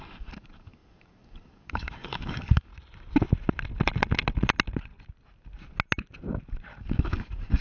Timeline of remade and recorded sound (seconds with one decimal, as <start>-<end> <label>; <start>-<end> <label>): 0.0-2.7 remade; 2.7-6.8 recorded; 6.8-7.6 remade